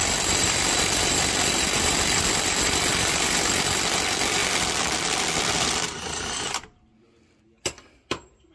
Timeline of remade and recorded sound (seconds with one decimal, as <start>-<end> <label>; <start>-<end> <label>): 0.0-6.9 remade; 6.9-8.5 recorded